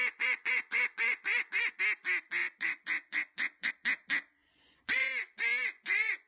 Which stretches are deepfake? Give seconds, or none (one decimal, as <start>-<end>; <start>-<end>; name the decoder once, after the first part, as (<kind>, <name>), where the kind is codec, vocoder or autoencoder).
0.0-1.8 (vocoder, Vocos); 2.4-3.7; 4.4-6.3